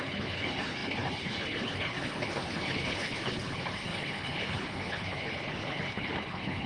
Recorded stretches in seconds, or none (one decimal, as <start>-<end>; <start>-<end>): none